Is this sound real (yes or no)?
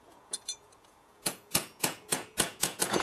no